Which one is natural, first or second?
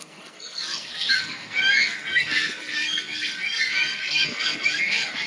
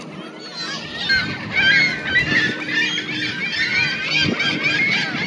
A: second